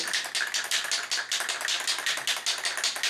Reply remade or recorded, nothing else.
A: recorded